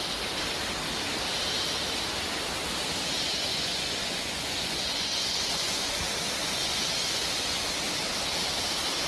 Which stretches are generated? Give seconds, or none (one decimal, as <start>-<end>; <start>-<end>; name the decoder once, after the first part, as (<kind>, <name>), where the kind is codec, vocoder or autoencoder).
3.5-6.0 (vocoder, Vocos); 6.4-7.6